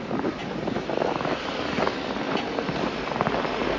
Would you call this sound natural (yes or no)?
yes